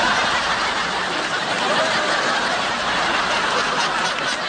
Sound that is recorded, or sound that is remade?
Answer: recorded